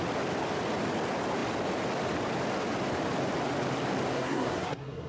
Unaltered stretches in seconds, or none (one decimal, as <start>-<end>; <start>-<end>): 0.0-4.1